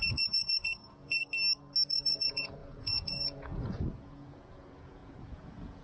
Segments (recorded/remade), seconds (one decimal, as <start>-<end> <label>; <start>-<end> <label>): 0.0-1.2 remade; 1.2-1.9 recorded; 1.9-5.8 remade